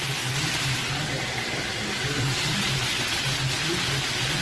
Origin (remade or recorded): recorded